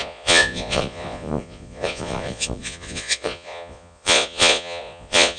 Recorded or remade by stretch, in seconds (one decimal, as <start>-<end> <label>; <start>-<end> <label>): 0.0-5.4 remade